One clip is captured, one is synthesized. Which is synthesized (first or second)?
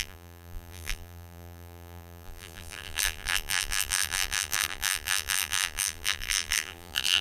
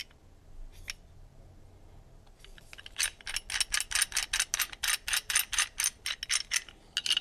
first